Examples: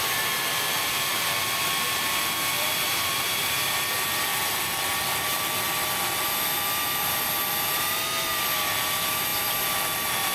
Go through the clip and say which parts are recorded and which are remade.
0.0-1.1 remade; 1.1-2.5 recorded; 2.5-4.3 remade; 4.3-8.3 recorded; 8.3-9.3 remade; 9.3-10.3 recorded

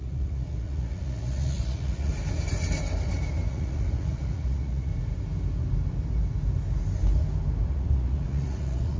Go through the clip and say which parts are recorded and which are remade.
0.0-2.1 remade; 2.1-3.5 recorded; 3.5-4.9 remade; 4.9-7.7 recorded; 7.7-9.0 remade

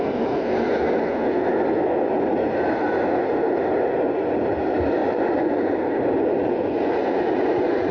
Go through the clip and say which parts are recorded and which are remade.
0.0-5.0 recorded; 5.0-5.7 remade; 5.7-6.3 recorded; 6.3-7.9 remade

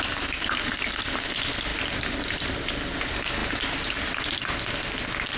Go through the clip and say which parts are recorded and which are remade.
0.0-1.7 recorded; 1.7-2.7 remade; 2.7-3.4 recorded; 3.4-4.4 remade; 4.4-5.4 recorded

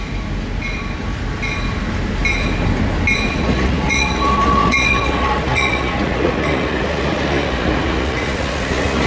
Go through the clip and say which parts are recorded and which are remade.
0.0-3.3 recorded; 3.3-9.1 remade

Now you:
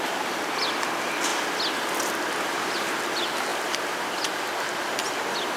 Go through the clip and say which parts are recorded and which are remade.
0.0-3.5 recorded; 3.5-4.1 remade; 4.1-5.6 recorded

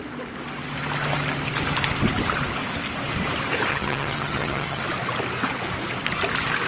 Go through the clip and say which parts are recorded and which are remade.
0.0-3.7 recorded; 3.7-4.8 remade; 4.8-6.7 recorded

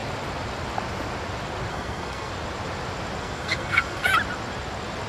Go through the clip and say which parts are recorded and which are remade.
0.0-1.7 recorded; 1.7-2.3 remade; 2.3-3.2 recorded; 3.2-4.1 remade; 4.1-5.1 recorded